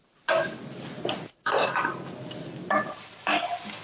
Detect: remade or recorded recorded